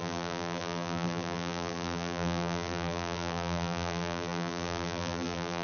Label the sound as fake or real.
fake